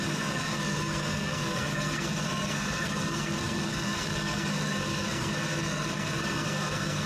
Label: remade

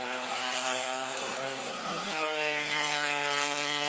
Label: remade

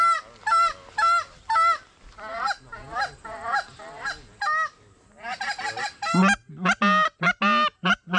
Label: recorded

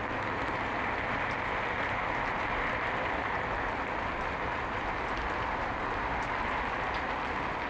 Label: recorded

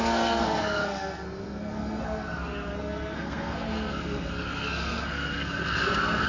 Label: remade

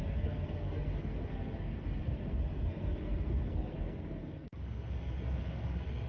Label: remade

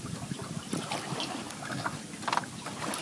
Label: recorded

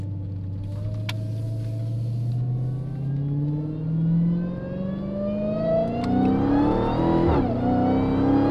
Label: recorded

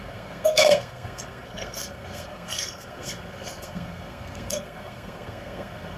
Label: remade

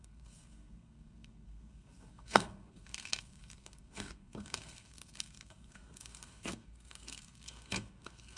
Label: remade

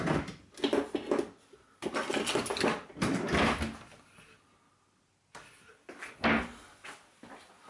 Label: recorded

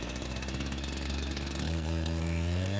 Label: remade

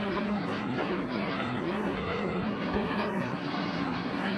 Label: remade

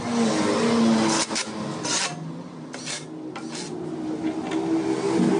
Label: recorded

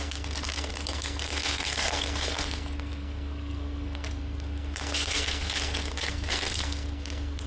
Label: remade